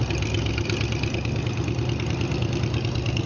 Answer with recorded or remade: recorded